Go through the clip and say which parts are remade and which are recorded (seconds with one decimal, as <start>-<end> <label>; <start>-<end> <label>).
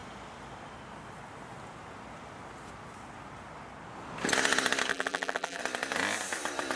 0.0-4.9 recorded; 4.9-5.6 remade; 5.6-6.8 recorded